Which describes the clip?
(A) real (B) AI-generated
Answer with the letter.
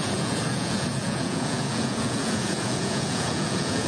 B